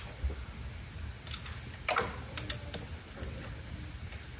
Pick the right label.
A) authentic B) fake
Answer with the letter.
A